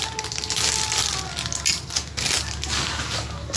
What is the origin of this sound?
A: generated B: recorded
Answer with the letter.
B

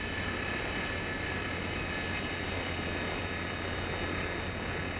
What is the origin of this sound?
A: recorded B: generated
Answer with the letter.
A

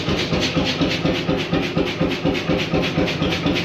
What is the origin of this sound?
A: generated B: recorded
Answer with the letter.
B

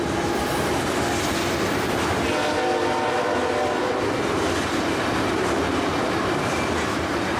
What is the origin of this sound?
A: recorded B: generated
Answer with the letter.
A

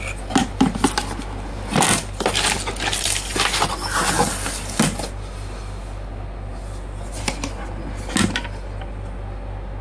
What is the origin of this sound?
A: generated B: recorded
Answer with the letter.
B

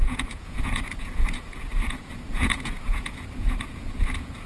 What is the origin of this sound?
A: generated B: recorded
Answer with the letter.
A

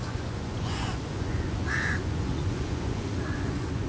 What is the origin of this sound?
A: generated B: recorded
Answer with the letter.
A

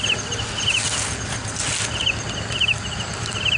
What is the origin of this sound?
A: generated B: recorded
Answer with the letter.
B